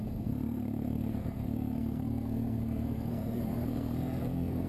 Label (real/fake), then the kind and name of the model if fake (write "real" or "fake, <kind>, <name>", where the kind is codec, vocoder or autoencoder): fake, codec, SNAC